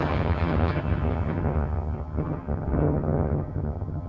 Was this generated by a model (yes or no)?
yes